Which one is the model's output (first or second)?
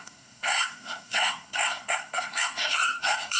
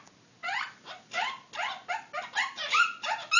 first